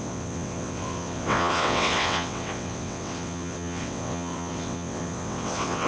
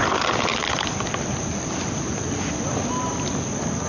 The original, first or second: second